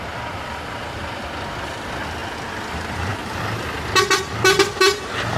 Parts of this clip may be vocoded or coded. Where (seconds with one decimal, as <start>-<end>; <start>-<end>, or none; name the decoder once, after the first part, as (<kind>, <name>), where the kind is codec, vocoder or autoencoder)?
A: none